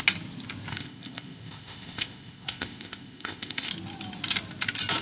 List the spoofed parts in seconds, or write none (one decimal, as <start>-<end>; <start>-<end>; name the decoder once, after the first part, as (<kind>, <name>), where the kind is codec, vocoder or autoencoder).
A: 0.7-3.7 (codec, ZipCodec)